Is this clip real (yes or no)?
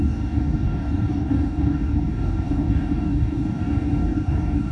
no